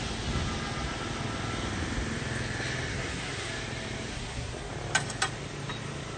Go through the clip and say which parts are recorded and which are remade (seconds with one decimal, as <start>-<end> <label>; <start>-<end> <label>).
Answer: 0.0-2.9 recorded; 2.9-3.5 remade; 3.5-4.1 recorded; 4.1-4.7 remade; 4.7-6.2 recorded